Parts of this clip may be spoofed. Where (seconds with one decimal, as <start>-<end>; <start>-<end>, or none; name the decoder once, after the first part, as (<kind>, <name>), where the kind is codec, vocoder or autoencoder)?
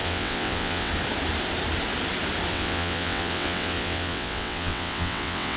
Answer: 0.0-0.9 (vocoder, WaveNeXt); 2.5-5.6